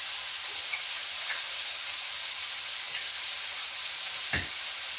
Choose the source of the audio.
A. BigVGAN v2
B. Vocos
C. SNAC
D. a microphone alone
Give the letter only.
D